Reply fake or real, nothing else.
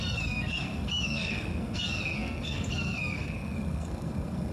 fake